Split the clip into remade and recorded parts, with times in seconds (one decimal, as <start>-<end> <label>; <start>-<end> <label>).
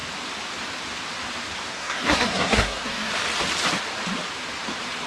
0.0-1.7 recorded; 1.7-3.1 remade; 3.1-5.1 recorded